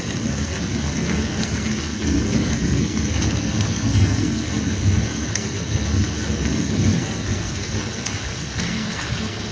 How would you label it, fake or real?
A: fake